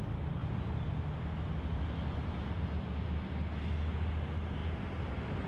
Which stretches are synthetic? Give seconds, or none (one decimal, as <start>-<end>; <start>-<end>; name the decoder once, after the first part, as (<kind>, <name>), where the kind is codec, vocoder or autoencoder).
none